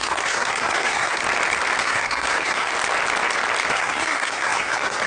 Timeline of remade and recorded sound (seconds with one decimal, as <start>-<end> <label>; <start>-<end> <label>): 0.0-1.2 remade; 1.2-1.8 recorded; 1.8-2.7 remade; 2.7-3.7 recorded; 3.7-5.1 remade